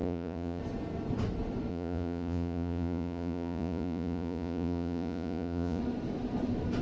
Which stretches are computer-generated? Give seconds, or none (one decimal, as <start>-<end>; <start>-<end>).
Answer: 0.0-0.6; 1.7-5.8